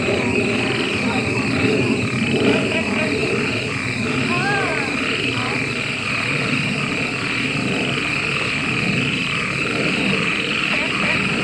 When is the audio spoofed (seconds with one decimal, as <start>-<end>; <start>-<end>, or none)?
none